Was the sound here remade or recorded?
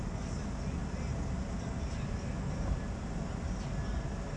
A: recorded